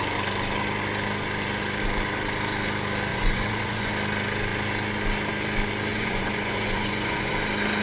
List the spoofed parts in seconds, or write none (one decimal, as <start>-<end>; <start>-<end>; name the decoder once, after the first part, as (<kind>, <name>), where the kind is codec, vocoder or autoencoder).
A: 3.1-3.9 (vocoder, Vocos); 5.9-7.3